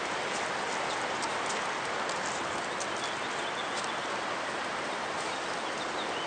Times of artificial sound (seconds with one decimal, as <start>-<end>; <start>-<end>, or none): none